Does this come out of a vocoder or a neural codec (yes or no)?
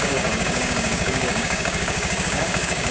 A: yes